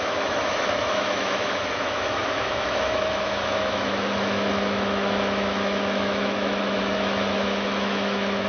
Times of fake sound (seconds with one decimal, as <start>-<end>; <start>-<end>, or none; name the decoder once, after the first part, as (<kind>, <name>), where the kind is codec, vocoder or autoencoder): 0.0-8.5 (autoencoder, DAC-VAE)